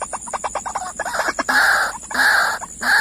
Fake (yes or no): no